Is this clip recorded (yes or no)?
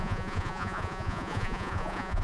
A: no